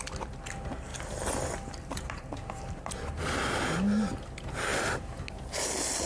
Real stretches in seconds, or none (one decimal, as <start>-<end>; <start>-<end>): 0.0-0.9; 3.1-4.7; 5.2-6.1